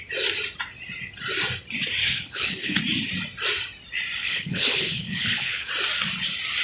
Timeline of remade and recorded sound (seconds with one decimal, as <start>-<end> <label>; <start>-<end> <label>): 0.0-2.0 recorded; 2.0-2.8 remade; 2.8-4.2 recorded; 4.2-5.7 remade; 5.7-6.6 recorded